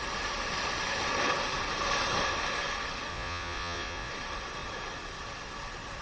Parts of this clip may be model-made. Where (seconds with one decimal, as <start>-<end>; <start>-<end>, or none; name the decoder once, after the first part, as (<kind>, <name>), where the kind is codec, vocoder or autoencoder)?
3.1-4.1 (vocoder, Vocos)